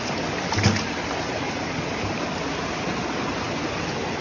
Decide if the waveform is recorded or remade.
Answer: recorded